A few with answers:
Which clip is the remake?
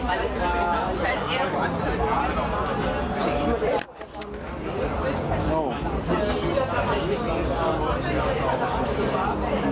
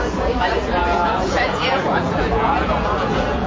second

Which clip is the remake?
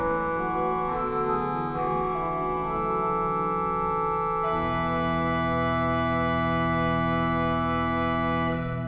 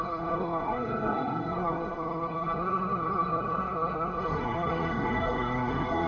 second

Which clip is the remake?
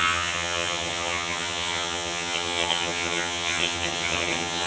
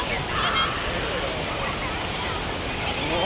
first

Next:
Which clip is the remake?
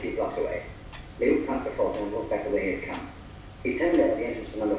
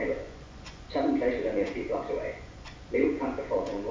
second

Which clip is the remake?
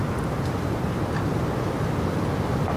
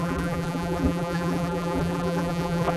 second